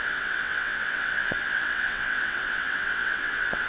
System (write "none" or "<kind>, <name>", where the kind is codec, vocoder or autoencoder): vocoder, WaveNeXt